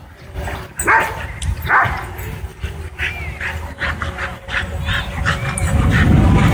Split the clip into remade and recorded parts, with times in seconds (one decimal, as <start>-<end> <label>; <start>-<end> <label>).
0.0-6.5 recorded